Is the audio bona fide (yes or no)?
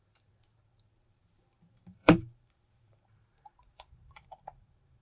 no